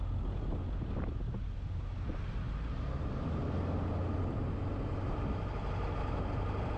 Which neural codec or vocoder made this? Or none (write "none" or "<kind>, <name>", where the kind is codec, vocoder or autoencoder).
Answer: none